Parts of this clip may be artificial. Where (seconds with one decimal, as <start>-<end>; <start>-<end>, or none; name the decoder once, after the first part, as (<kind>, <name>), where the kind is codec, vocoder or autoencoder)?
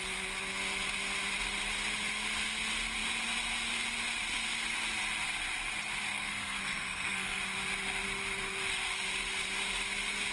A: 6.1-7.4 (codec, SNAC)